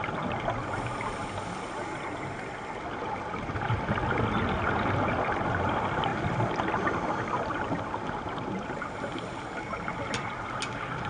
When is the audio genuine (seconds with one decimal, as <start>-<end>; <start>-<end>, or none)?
0.0-11.1